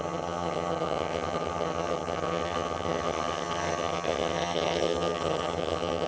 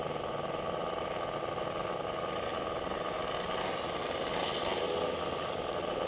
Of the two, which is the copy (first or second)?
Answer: first